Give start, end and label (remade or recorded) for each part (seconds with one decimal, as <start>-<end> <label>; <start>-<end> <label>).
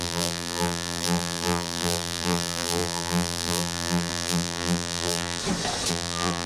0.0-5.4 remade; 5.4-5.9 recorded; 5.9-6.5 remade